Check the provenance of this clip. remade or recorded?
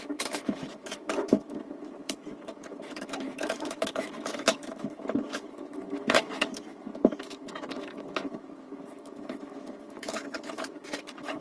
remade